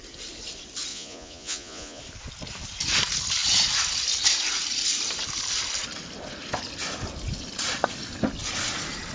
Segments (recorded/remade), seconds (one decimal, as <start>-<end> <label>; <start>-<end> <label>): 0.0-0.9 recorded; 0.9-2.0 remade; 2.0-9.1 recorded